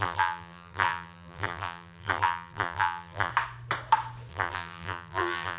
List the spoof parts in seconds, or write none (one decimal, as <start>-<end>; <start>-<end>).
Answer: 0.0-3.3; 4.3-5.6